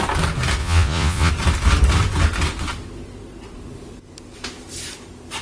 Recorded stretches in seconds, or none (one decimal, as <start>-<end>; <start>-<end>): 0.0-0.6; 1.3-5.4